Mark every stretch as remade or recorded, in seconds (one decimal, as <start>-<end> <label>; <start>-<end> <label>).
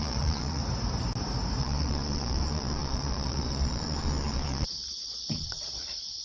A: 0.0-0.6 remade; 0.6-1.6 recorded; 1.6-6.2 remade